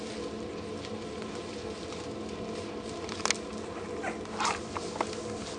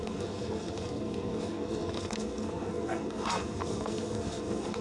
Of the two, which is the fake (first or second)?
second